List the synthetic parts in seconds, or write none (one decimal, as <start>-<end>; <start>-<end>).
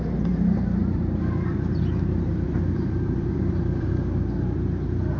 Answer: 0.8-3.9